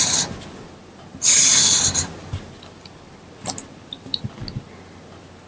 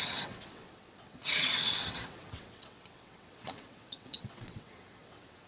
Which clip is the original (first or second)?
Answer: first